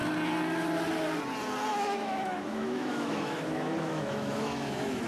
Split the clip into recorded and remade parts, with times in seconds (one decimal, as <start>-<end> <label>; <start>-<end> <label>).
0.0-1.7 recorded; 1.7-5.1 remade